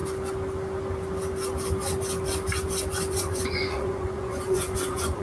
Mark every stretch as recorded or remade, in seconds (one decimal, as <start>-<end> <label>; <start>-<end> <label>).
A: 0.0-3.1 recorded; 3.1-5.2 remade